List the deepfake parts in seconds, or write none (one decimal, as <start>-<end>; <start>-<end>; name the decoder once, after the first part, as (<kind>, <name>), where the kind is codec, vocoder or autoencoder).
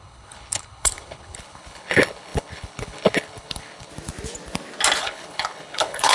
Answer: 0.0-3.9 (codec, HILCodec); 5.0-6.1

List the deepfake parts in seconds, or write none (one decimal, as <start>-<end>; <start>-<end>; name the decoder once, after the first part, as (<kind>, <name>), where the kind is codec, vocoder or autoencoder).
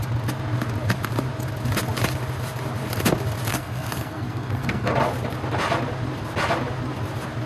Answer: 3.5-4.9 (codec, SNAC)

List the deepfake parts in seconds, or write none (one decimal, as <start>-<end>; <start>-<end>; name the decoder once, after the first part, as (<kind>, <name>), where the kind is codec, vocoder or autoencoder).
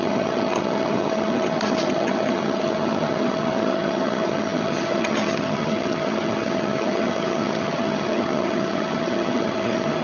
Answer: 0.0-10.0 (vocoder, HiFi-GAN)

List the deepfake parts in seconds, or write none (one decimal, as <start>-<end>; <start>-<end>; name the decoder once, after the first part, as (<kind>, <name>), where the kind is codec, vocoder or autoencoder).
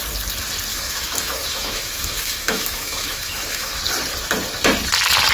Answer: 0.7-3.8 (autoencoder, DAC-VAE)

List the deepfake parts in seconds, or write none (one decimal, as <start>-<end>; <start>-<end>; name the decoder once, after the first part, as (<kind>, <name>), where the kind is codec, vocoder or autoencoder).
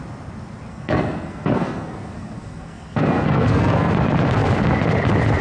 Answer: 0.7-3.9 (codec, SNAC)